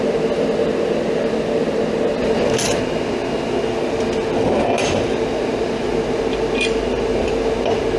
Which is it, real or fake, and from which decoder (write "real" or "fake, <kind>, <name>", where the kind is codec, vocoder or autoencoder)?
real